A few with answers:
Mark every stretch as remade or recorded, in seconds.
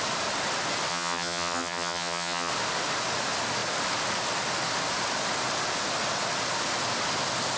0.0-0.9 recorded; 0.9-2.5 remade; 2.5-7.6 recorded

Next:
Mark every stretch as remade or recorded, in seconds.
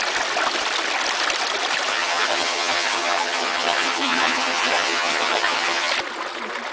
0.0-1.9 recorded; 1.9-5.9 remade; 5.9-6.7 recorded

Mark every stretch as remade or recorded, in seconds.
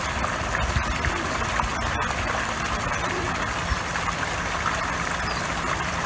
0.0-6.1 recorded